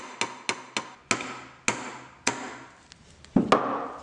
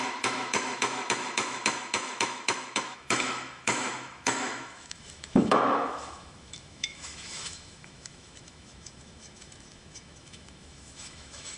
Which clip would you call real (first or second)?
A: first